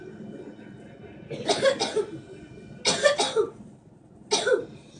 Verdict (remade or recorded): recorded